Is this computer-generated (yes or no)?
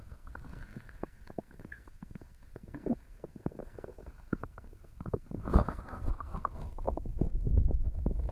yes